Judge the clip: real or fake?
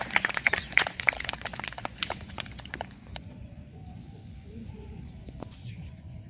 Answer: fake